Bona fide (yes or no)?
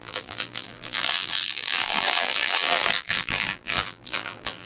no